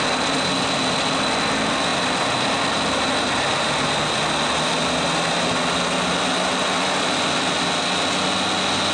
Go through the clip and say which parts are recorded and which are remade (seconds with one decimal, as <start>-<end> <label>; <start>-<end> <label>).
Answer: 0.0-8.9 recorded